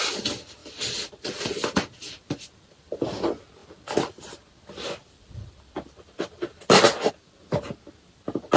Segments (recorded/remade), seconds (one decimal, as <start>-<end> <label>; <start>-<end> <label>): 0.0-0.6 recorded; 0.6-2.8 remade; 2.8-3.6 recorded; 3.6-7.1 remade; 7.1-8.6 recorded